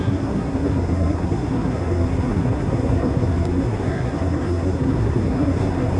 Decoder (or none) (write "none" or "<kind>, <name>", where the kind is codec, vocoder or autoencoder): codec, SNAC